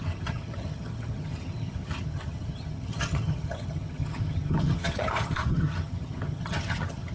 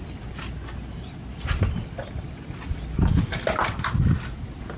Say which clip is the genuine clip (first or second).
second